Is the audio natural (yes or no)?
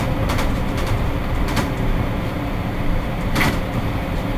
no